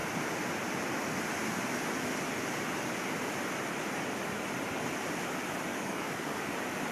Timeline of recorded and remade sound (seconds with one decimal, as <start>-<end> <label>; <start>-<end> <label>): 0.0-5.7 recorded; 5.7-6.5 remade; 6.5-6.9 recorded